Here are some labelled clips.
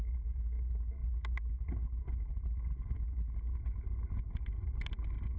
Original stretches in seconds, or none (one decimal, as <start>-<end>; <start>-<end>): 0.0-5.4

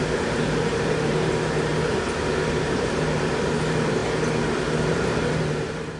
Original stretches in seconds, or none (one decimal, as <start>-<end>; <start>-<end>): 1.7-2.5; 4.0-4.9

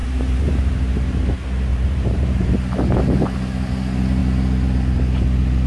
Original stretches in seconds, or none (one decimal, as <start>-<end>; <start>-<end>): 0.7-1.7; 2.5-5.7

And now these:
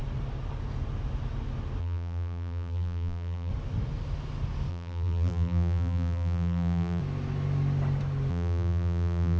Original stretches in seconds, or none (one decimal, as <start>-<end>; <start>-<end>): 0.0-1.8; 3.5-4.7; 7.0-8.3

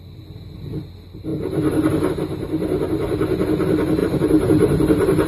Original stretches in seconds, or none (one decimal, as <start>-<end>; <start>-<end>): 0.0-4.0

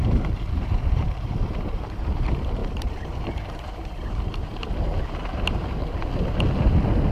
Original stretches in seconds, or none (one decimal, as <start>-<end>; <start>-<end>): 5.8-7.1

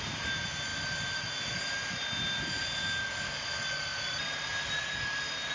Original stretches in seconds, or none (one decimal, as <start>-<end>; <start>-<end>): 0.0-0.7; 1.2-3.9; 4.8-5.5